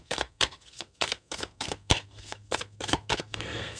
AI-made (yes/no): yes